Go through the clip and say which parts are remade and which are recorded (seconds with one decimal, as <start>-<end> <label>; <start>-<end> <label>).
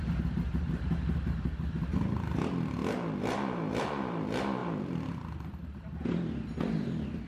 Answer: 0.0-4.6 recorded; 4.6-5.1 remade; 5.1-7.3 recorded